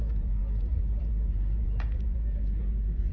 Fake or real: fake